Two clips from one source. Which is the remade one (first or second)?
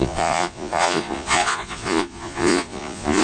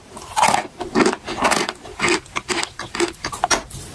first